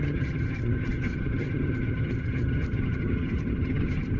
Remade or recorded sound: remade